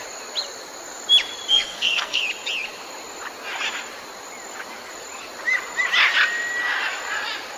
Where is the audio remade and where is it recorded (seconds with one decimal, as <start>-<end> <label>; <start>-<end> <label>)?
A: 0.0-1.5 recorded; 1.5-2.2 remade; 2.2-7.6 recorded